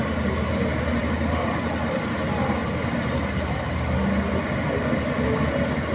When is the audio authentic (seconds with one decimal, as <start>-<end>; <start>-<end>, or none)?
0.0-5.9